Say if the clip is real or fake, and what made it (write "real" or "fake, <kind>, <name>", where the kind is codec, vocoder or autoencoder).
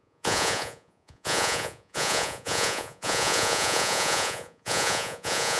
fake, vocoder, Vocos